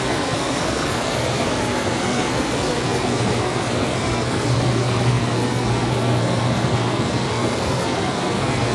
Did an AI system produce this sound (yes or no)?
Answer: yes